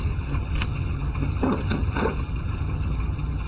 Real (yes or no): no